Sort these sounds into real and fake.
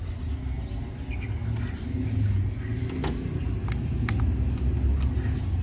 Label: real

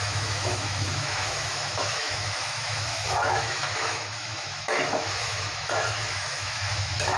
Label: fake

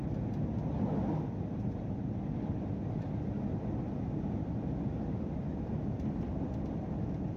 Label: real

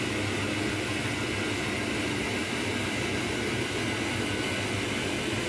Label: real